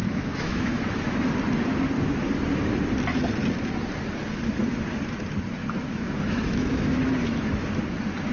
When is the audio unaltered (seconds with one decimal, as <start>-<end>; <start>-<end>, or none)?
1.3-5.6; 7.7-8.3